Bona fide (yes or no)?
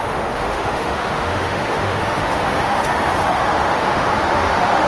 no